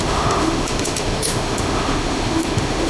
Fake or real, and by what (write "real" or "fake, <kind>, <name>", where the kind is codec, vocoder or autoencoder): fake, autoencoder, DAC-VAE